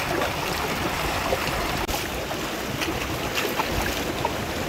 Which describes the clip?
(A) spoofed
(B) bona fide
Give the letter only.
B